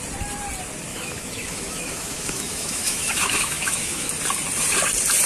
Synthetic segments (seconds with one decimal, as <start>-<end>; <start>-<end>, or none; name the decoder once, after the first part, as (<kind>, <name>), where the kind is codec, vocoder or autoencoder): 0.9-4.1 (autoencoder, DAC-VAE)